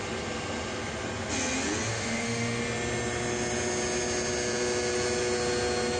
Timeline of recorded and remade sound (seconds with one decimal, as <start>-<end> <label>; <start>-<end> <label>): 0.0-1.9 recorded; 1.9-2.6 remade; 2.6-6.0 recorded